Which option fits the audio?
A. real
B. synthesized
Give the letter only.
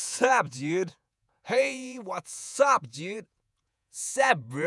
B